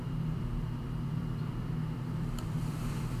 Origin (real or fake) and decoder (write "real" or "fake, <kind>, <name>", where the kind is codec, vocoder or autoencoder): fake, vocoder, BigVGAN v2